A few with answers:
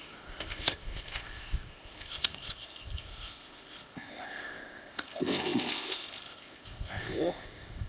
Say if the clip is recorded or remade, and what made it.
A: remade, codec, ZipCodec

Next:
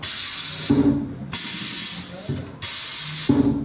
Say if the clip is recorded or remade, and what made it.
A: recorded